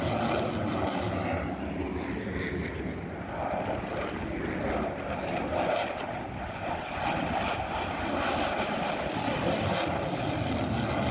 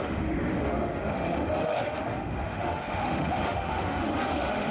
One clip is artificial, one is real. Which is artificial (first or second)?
second